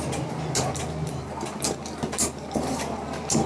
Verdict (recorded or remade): recorded